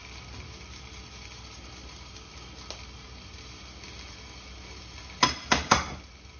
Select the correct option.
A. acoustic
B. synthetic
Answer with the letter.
A